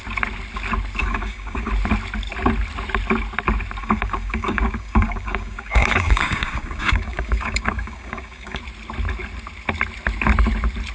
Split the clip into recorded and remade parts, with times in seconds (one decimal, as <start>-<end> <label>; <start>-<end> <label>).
0.0-1.0 recorded; 1.0-1.7 remade; 1.7-3.8 recorded; 3.8-8.6 remade; 8.6-10.9 recorded